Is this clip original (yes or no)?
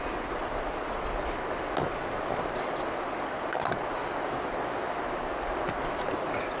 yes